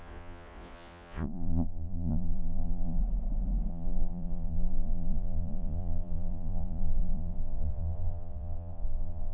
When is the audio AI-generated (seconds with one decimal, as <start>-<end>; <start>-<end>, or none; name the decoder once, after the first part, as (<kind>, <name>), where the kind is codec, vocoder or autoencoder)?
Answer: 0.0-3.0 (vocoder, Vocos); 3.7-9.3